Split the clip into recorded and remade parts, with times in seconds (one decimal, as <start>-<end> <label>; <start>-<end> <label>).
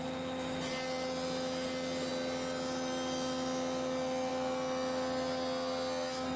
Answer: 0.0-6.4 recorded